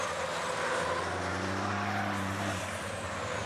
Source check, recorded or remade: recorded